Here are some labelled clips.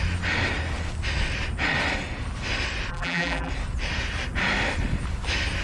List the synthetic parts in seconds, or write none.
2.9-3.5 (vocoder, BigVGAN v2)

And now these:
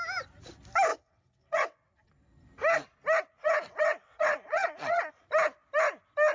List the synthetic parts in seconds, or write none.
0.9-2.1 (vocoder, WaveNeXt); 3.4-5.1

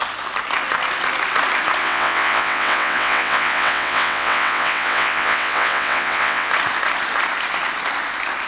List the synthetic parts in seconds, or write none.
1.8-6.5 (vocoder, WaveNeXt)

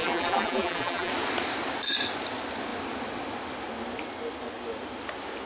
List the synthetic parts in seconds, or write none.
0.0-1.1 (vocoder, BigVGAN v2)

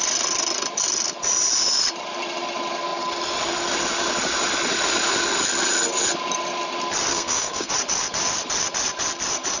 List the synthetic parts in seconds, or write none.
7.1-7.7 (codec, SNAC)

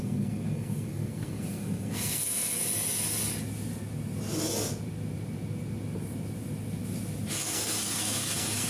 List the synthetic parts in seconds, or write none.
0.0-2.6 (codec, SNAC); 7.3-8.7

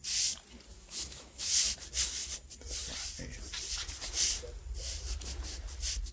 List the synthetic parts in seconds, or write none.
0.7-1.5 (autoencoder, DAC-VAE)

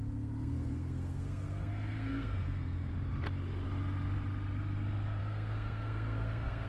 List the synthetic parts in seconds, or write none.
0.0-2.9 (codec, SNAC); 5.2-6.7